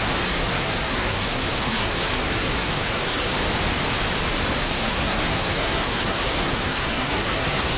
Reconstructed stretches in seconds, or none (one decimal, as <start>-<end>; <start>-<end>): 0.0-3.3; 4.6-7.8